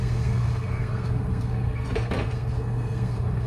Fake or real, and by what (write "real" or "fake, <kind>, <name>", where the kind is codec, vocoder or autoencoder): fake, codec, SNAC